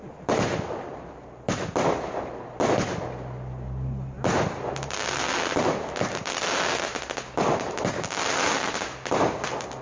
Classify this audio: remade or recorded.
recorded